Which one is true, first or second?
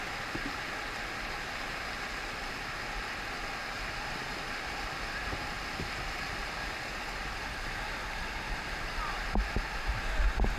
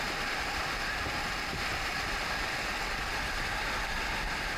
first